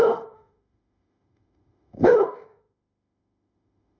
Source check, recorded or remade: remade